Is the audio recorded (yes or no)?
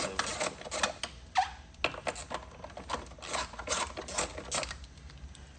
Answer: yes